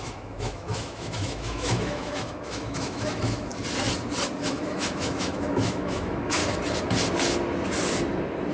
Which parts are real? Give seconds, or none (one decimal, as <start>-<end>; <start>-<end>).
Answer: 3.5-4.4; 6.4-8.5

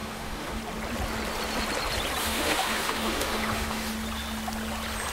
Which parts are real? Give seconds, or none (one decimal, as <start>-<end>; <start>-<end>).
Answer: 0.6-2.2; 3.9-5.1

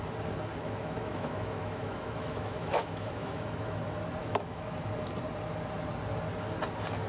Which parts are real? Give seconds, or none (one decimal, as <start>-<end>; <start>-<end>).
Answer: 0.0-0.5; 3.8-4.2; 4.8-7.1

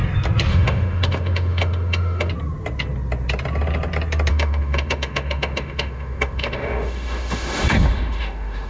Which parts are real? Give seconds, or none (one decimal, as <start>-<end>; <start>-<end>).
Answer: 0.0-0.5; 2.3-4.3